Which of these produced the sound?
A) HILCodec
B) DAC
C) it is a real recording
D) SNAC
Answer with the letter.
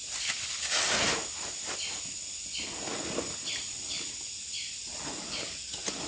C